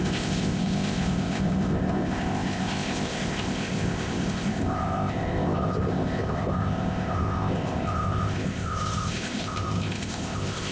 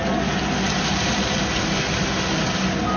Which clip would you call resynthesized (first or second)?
first